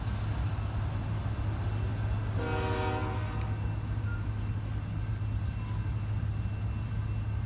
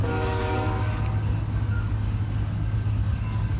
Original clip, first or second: first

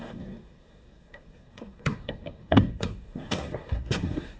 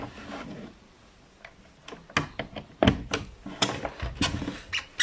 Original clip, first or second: second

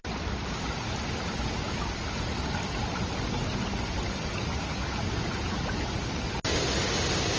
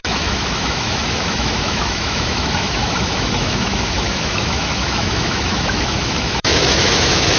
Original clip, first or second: first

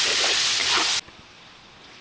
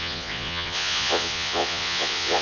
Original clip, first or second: first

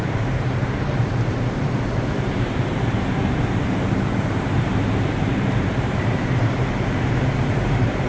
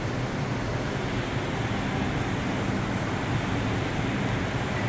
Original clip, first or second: second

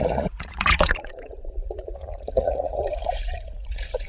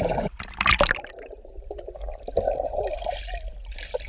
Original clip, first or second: second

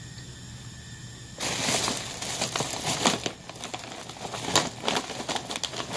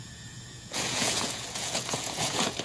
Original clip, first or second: first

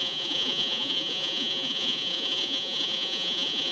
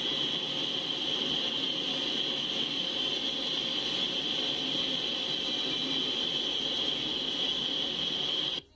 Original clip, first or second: second